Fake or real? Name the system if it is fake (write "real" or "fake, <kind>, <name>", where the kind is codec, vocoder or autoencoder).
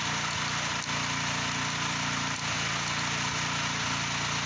real